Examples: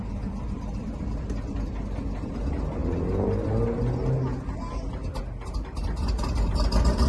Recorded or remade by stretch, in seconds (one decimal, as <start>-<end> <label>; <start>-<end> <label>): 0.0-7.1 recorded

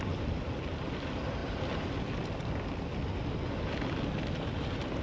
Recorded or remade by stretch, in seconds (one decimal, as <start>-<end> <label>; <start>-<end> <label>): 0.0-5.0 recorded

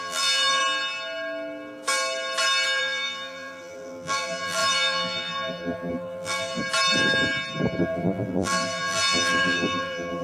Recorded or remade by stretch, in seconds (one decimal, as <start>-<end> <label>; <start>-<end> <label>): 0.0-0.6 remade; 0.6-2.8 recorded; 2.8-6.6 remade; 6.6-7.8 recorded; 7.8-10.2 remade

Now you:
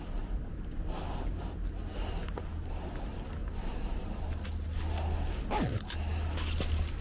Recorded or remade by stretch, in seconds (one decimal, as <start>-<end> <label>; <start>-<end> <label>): 0.0-7.0 recorded

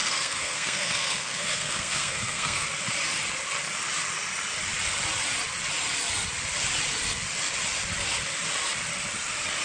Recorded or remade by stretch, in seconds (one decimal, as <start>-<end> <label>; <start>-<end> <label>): 0.0-2.7 remade; 2.7-9.6 recorded

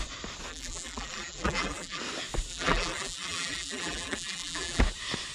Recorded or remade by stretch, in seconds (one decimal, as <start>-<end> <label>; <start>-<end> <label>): 0.0-0.5 recorded; 0.5-2.0 remade; 2.0-2.5 recorded; 2.5-4.8 remade; 4.8-5.3 recorded

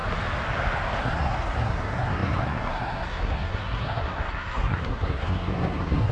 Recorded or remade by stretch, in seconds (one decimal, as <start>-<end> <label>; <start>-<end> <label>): 0.0-1.0 recorded; 1.0-6.1 remade

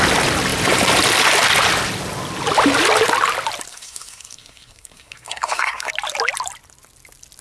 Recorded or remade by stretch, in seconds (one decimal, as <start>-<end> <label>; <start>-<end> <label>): 0.0-3.7 recorded; 3.7-5.9 remade; 5.9-7.4 recorded